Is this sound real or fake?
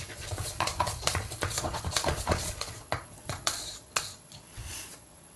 fake